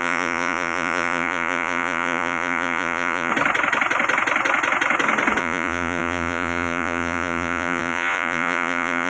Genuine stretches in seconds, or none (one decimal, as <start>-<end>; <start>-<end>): 3.3-5.4